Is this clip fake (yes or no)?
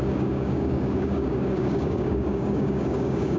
yes